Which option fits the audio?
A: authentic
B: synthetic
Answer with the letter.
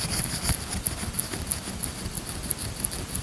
A